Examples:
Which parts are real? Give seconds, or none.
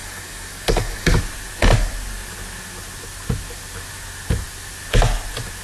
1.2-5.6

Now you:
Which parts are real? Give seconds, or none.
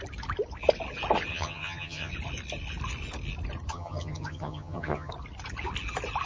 0.0-1.3; 2.1-3.7; 5.1-6.3